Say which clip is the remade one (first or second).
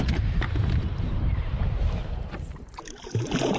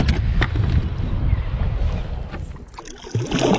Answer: first